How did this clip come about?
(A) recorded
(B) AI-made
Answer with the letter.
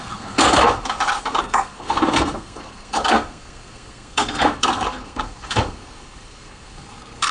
B